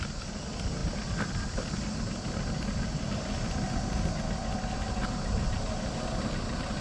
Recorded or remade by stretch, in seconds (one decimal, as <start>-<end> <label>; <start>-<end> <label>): 0.0-6.8 recorded